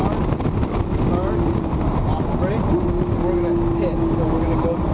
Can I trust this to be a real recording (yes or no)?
yes